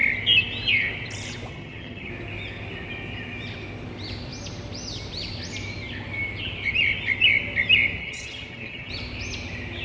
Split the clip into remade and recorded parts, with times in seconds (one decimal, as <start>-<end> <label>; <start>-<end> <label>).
0.0-1.5 recorded; 1.5-2.1 remade; 2.1-8.0 recorded; 8.0-8.9 remade; 8.9-9.8 recorded